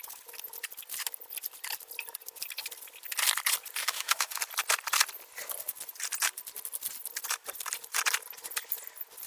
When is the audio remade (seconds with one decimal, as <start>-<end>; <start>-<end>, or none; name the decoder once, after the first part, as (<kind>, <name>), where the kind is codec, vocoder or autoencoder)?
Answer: 3.8-4.4 (autoencoder, DAC-VAE)